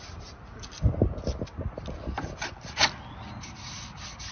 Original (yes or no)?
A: yes